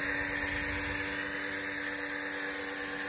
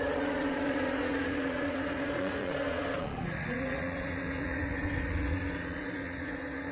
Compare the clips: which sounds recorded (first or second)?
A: first